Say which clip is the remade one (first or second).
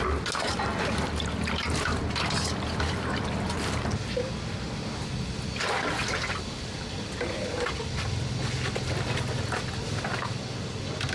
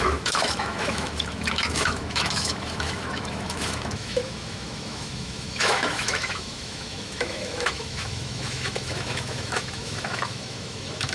second